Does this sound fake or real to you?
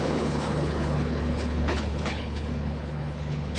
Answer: fake